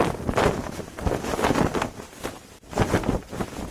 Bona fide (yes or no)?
no